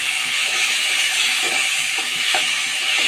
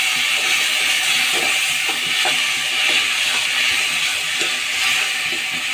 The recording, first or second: second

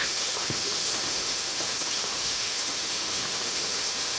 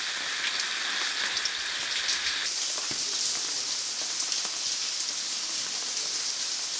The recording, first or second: second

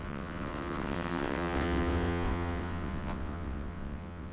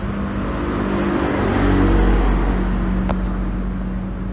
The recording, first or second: second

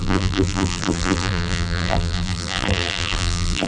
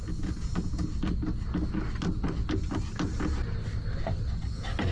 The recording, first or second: second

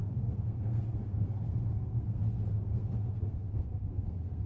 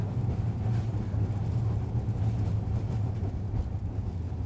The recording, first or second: second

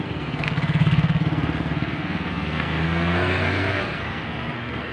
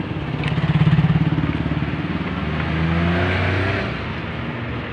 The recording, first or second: second